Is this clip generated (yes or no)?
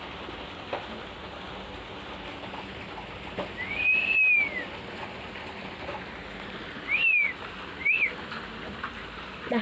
no